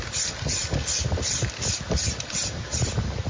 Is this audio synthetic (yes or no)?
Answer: no